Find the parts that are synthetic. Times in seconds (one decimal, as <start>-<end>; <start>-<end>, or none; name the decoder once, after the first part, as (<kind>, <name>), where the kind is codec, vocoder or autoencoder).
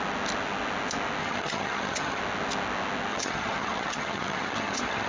1.2-2.2 (vocoder, HiFi-GAN); 3.1-5.1